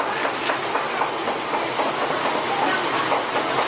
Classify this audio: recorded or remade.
recorded